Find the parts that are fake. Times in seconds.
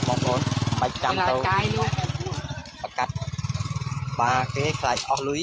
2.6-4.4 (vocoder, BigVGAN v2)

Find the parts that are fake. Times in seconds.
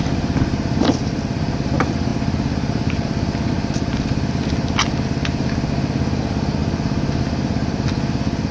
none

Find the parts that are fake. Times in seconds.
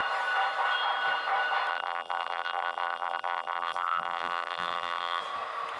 1.7-5.2 (vocoder, BigVGAN v2)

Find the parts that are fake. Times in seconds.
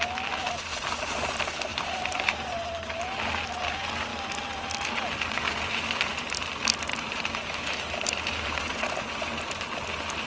1.7-3.0 (vocoder, BigVGAN v2); 6.9-9.6